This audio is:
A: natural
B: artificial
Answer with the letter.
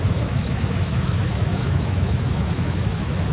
B